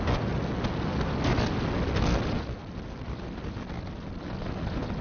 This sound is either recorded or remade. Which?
recorded